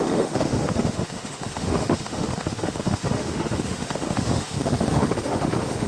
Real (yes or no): no